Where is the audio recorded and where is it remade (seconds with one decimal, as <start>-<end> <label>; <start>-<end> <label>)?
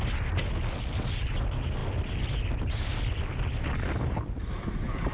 0.0-5.1 recorded